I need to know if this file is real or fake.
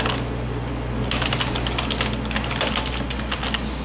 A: real